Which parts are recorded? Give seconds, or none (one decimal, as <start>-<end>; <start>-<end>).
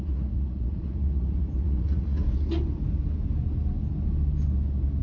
2.2-5.0